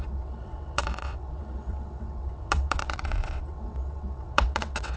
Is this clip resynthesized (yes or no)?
yes